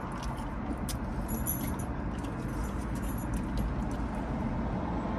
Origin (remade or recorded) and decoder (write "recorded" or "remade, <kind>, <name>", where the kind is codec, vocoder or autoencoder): recorded